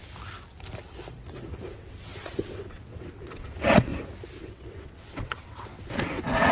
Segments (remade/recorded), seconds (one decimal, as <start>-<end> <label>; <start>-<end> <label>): 0.0-1.7 recorded; 1.7-3.9 remade; 3.9-4.4 recorded; 4.4-6.5 remade